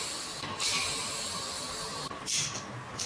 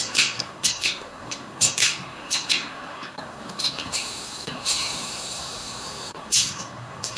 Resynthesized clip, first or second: second